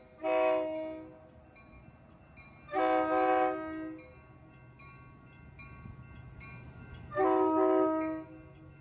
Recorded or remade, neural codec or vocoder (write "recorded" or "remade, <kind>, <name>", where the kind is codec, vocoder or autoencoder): recorded